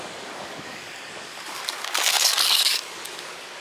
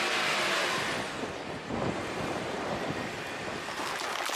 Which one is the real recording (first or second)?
second